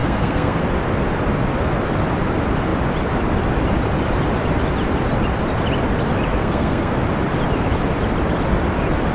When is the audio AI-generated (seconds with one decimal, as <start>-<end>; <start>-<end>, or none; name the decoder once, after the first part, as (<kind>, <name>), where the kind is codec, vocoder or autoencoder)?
0.0-0.6 (codec, SNAC); 6.3-7.0